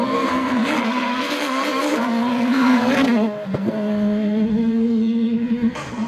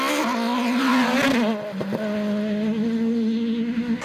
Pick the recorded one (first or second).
second